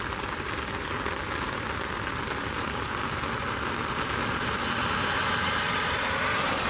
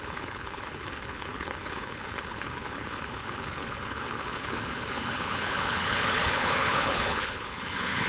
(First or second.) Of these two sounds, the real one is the first